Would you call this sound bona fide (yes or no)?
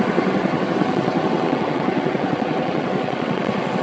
no